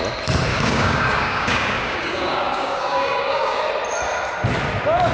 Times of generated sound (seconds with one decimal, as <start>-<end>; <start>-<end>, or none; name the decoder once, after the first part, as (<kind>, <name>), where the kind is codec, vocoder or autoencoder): 0.5-3.6 (codec, DAC)